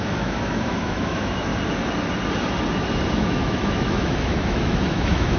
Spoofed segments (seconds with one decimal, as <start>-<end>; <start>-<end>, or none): 0.0-1.5; 3.1-5.4

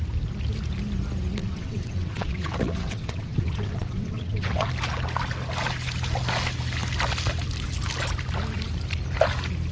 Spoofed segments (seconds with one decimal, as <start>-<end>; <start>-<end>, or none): 1.4-4.7

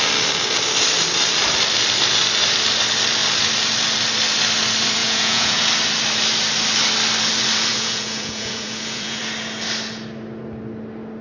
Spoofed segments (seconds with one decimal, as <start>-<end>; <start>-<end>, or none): 5.0-5.6; 7.7-9.2

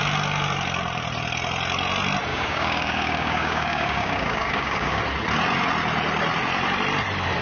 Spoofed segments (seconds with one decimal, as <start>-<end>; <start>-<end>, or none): 2.3-5.0